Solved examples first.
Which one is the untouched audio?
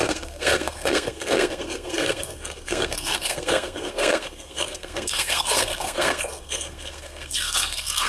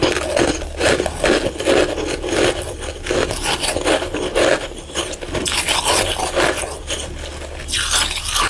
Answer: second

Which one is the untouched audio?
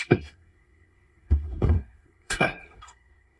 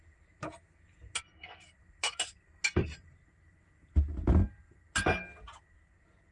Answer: second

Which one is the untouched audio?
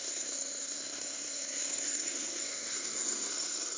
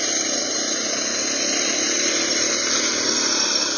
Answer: second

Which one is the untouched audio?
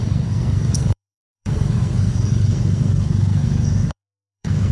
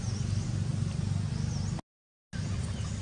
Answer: second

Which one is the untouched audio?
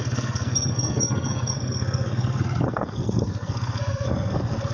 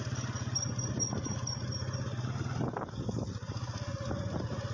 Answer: second